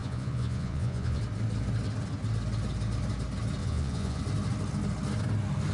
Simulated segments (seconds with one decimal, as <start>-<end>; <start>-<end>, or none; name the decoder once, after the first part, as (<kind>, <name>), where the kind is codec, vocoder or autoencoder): 0.0-1.2 (vocoder, Vocos); 3.6-4.2